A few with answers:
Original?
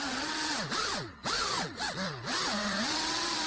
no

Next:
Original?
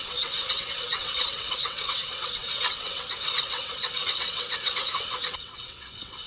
no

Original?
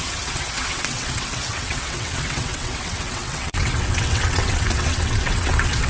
no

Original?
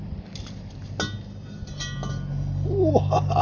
yes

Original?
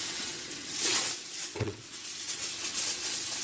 no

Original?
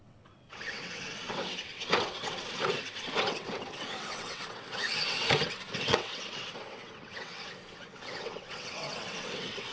no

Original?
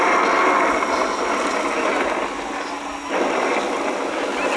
yes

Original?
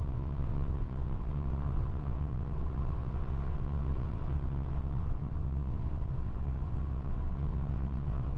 no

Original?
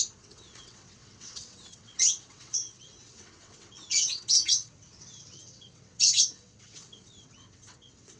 no